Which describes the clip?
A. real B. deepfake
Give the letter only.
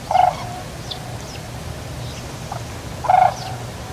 B